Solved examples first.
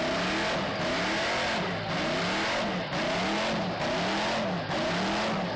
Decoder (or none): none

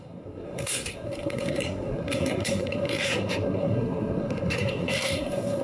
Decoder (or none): codec, SNAC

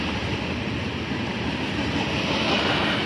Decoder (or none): none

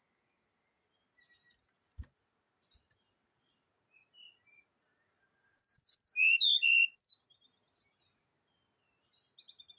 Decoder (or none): none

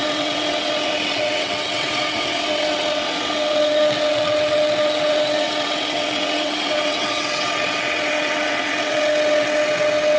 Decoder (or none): vocoder, WaveNeXt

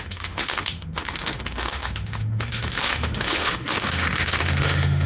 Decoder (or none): autoencoder, DAC-VAE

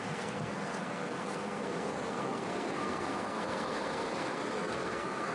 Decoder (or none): codec, SNAC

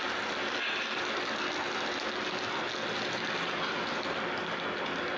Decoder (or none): none